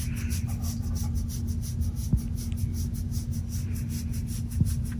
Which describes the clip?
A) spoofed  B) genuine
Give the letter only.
B